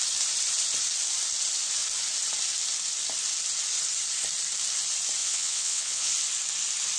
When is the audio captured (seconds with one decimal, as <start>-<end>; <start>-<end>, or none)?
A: 0.0-5.2; 6.1-7.0